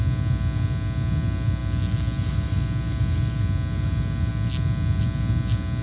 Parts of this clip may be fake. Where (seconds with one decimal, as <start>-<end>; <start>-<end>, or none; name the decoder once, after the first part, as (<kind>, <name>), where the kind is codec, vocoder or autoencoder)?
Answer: none